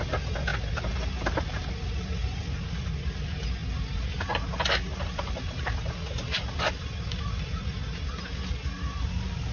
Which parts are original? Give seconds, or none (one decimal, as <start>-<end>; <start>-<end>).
0.0-9.5